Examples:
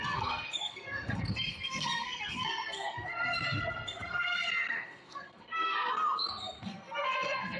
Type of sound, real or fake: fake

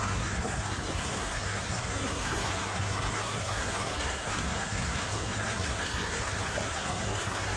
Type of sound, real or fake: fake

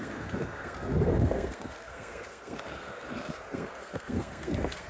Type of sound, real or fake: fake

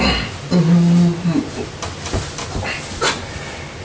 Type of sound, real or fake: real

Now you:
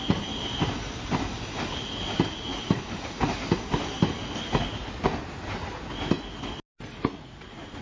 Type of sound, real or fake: real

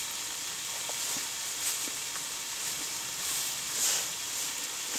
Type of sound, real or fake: real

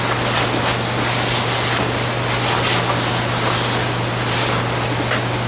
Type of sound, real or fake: real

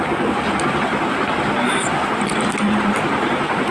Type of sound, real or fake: real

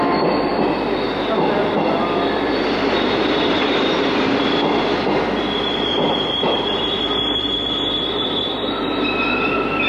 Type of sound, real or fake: real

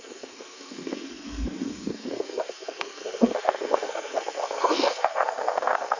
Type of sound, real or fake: fake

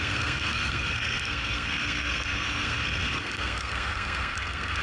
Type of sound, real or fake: fake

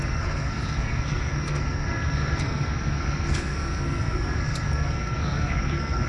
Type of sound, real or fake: fake